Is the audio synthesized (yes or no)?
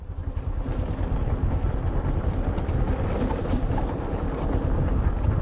no